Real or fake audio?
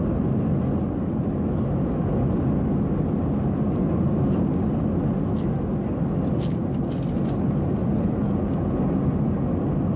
real